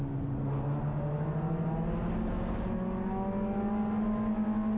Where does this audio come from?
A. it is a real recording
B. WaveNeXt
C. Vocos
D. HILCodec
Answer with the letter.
A